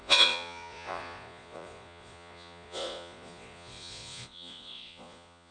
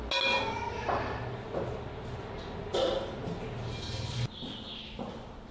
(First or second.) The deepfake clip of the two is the first